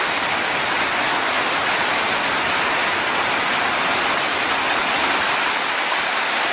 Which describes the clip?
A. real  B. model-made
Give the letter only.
A